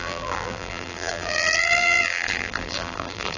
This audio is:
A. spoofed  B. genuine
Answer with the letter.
A